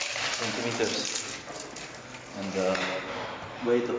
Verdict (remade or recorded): recorded